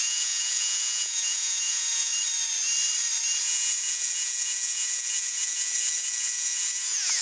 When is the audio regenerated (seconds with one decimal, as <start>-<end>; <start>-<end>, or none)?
0.0-2.1; 3.4-7.2

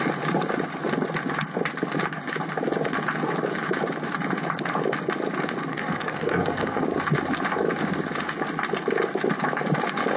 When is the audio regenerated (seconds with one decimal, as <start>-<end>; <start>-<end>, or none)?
5.7-6.8

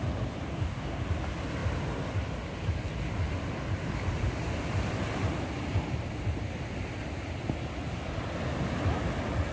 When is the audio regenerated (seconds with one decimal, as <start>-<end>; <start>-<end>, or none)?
0.5-1.0

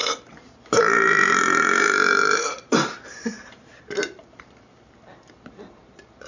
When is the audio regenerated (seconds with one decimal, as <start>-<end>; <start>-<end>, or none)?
0.0-6.3

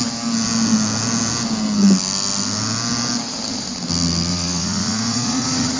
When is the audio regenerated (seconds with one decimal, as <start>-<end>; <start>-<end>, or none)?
4.3-5.8

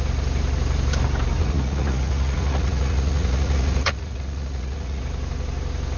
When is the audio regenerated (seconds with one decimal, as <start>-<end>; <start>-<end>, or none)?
1.4-5.0

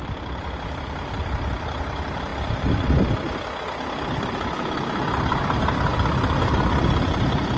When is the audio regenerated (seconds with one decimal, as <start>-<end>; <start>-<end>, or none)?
0.0-2.3; 3.6-5.9; 7.0-7.6

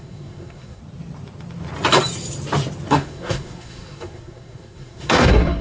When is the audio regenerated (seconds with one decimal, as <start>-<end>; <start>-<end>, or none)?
0.0-0.8; 2.9-5.6